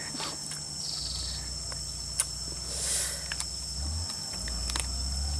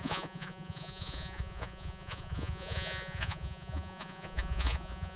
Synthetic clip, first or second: second